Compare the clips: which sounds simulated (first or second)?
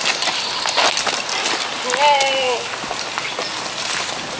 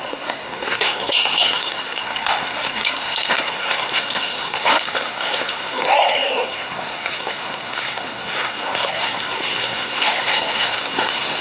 second